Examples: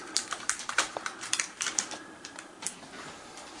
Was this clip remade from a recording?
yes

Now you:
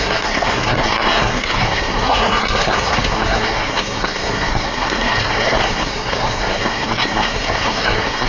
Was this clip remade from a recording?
yes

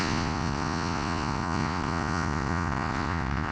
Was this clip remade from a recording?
yes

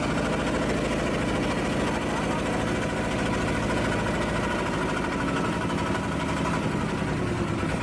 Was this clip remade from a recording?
no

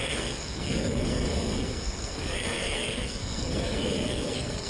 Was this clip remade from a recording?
yes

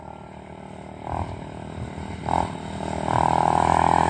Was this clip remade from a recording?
no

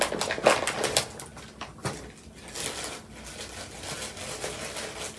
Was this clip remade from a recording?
no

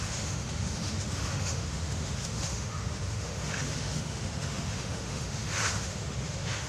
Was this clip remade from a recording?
yes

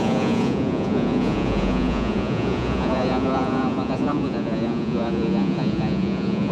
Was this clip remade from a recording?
yes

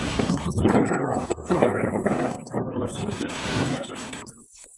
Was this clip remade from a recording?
yes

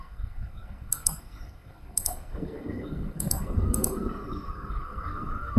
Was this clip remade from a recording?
yes